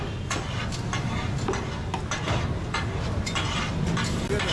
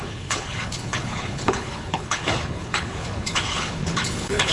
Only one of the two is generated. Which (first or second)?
second